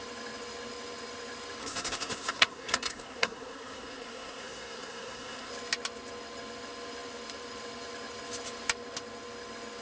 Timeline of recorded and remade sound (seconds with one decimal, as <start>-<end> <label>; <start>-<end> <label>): 0.0-1.6 recorded; 1.6-5.5 remade; 5.5-9.8 recorded

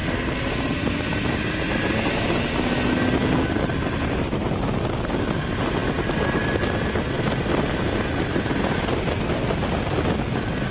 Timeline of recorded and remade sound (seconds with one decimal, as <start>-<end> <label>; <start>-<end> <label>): 0.0-3.7 recorded; 3.7-4.7 remade; 4.7-10.7 recorded

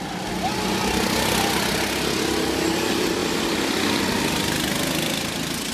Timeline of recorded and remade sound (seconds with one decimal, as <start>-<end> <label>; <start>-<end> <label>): 0.0-3.2 recorded; 3.2-4.0 remade; 4.0-5.7 recorded

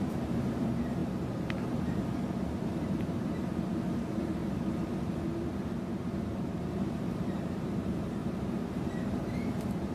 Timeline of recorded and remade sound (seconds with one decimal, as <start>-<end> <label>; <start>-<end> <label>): 0.0-4.4 remade; 4.4-6.2 recorded; 6.2-9.9 remade

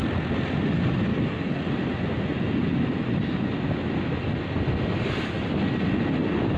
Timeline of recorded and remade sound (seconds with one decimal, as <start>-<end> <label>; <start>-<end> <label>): 0.0-1.1 recorded; 1.1-1.6 remade; 1.6-6.6 recorded